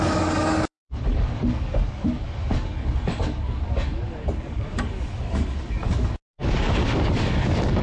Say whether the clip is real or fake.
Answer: fake